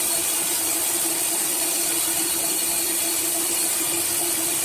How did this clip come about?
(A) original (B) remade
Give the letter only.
A